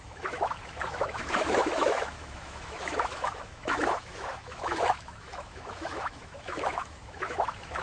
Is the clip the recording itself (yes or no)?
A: no